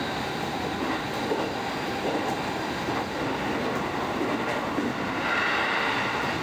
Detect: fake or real real